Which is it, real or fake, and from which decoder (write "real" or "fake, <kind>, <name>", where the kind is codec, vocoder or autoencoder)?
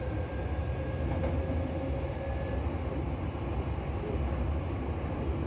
real